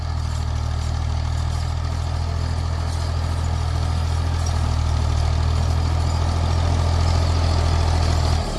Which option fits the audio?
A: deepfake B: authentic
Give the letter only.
B